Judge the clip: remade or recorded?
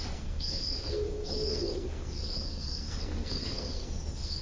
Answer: remade